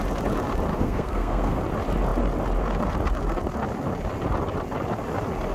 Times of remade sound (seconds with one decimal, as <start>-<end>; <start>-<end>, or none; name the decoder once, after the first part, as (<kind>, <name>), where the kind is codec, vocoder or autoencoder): 0.7-1.6 (codec, SNAC)